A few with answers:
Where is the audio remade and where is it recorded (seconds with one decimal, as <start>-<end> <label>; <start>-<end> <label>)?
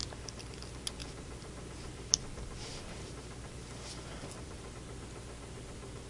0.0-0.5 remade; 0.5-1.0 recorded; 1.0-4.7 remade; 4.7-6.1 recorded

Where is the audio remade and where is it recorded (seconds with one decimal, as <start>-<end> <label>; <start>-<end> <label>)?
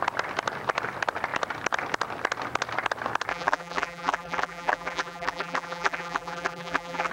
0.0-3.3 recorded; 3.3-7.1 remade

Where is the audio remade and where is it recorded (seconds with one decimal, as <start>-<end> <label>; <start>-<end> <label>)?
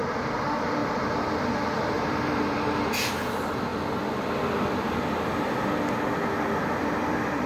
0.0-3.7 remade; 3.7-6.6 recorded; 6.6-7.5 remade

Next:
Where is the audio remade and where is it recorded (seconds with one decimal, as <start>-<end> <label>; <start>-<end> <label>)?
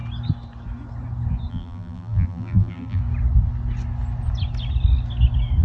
0.0-1.5 recorded; 1.5-3.0 remade; 3.0-5.6 recorded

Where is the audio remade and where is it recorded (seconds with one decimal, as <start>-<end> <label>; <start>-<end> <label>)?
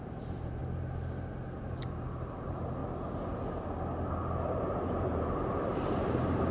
0.0-0.6 remade; 0.6-1.8 recorded; 1.8-2.8 remade; 2.8-4.5 recorded; 4.5-6.5 remade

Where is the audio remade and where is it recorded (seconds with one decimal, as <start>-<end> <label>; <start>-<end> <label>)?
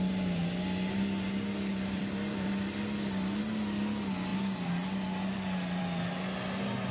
0.0-1.7 recorded; 1.7-2.5 remade; 2.5-6.9 recorded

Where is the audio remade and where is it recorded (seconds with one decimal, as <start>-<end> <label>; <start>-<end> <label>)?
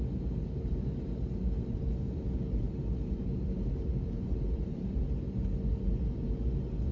0.0-1.7 recorded; 1.7-5.0 remade; 5.0-6.9 recorded